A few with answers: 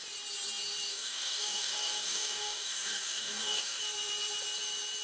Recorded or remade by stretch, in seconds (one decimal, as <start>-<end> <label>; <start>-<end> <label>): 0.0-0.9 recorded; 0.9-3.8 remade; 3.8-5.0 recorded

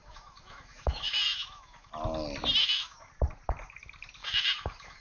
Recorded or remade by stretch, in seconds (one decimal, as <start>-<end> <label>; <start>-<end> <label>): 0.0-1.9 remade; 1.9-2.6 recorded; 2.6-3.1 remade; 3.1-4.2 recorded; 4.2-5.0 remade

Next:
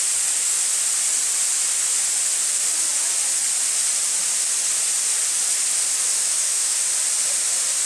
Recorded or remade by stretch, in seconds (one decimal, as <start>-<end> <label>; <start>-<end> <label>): 0.0-6.2 recorded; 6.2-6.8 remade; 6.8-7.9 recorded

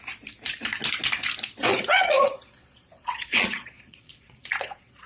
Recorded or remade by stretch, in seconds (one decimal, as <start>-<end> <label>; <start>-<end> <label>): 0.0-1.7 recorded; 1.7-5.1 remade

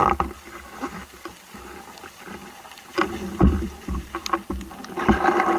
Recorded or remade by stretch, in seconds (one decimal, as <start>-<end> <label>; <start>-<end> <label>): 0.0-5.6 recorded